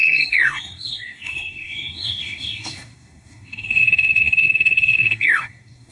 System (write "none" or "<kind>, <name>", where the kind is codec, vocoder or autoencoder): codec, SNAC